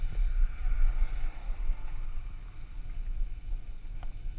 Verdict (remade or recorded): recorded